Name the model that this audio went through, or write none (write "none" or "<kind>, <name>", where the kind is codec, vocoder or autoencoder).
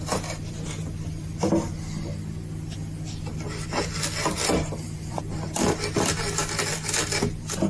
none